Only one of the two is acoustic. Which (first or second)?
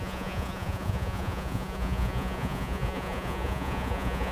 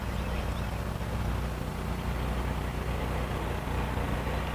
second